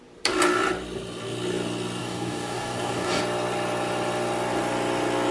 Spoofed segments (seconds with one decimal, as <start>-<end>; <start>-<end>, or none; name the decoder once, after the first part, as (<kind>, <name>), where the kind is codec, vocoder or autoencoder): 2.0-3.2 (codec, DAC)